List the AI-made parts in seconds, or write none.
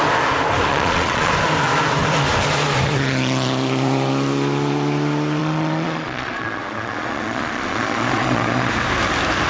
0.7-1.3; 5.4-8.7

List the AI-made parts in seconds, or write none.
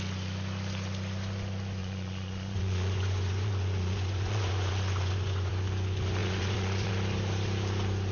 1.8-5.5; 6.2-6.9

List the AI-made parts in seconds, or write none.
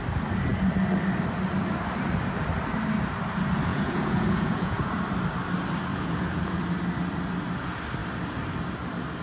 3.7-4.9; 5.9-6.6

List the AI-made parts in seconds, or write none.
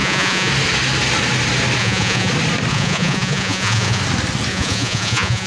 0.0-0.5; 1.8-2.3; 2.7-4.0; 4.5-5.5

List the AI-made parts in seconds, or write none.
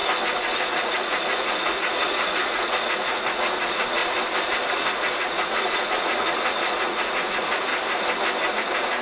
0.6-4.0; 4.7-7.7; 8.5-9.0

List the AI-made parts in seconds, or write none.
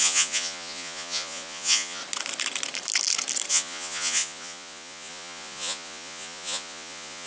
0.0-2.0; 3.5-7.3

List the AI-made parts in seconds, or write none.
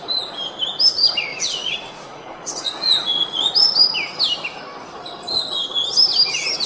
1.3-3.5